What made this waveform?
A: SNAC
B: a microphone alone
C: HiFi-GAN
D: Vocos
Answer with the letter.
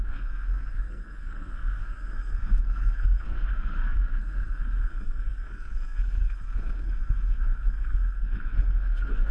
A